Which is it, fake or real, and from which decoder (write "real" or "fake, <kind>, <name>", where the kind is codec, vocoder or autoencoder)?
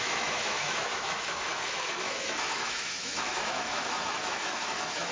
fake, autoencoder, DAC-VAE